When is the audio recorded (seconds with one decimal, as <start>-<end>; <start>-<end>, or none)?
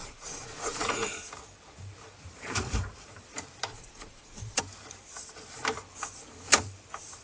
1.1-3.7; 4.6-7.2